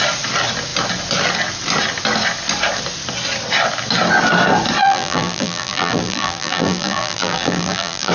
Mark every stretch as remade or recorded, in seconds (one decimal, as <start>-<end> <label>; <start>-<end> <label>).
0.0-4.8 recorded; 4.8-8.1 remade